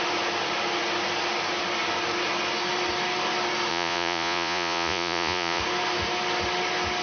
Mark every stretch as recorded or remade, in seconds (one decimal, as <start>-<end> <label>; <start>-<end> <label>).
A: 0.0-3.7 recorded; 3.7-5.6 remade; 5.6-7.0 recorded